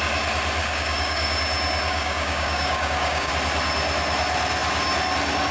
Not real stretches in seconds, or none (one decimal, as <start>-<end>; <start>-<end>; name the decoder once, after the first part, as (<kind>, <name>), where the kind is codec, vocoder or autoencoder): 0.6-1.4 (codec, DAC); 1.9-3.3